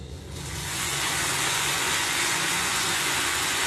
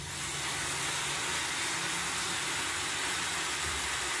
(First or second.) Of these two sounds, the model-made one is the first